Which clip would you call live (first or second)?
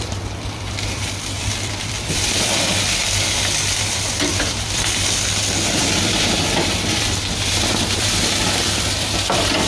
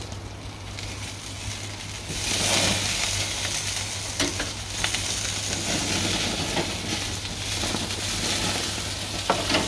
second